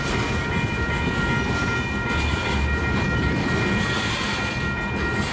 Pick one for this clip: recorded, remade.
recorded